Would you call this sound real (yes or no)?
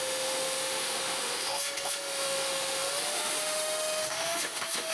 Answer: no